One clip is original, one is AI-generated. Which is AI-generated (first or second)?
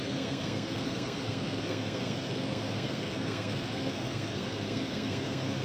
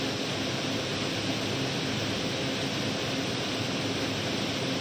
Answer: first